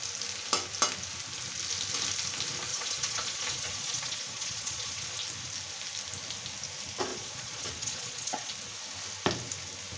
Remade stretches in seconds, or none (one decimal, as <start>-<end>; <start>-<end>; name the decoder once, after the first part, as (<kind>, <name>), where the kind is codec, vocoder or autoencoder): 2.7-5.2 (vocoder, Vocos); 7.1-8.5